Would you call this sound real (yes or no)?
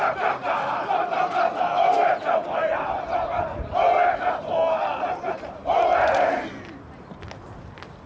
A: yes